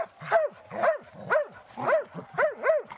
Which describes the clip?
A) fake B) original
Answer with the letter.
B